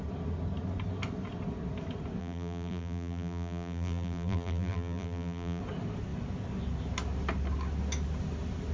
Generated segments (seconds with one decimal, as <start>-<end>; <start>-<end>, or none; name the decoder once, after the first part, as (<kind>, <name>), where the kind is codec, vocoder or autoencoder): 2.2-5.6 (vocoder, BigVGAN v2)